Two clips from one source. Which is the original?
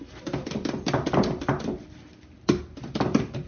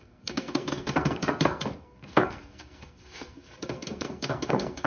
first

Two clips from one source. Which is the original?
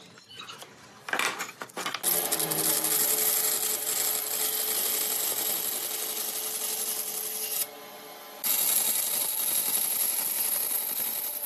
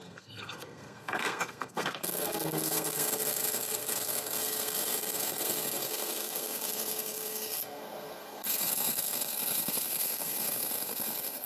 first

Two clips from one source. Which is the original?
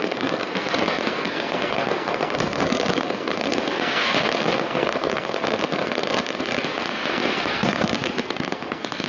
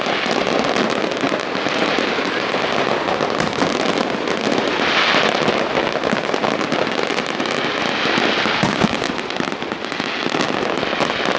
second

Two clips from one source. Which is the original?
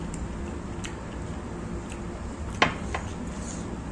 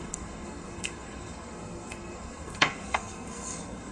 first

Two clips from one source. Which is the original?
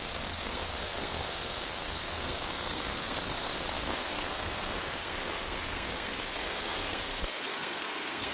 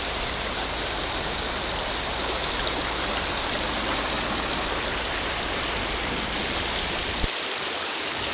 second